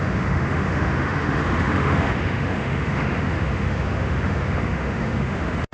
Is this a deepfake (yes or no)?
yes